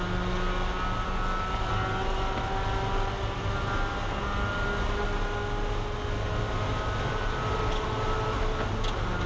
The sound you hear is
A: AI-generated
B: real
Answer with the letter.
B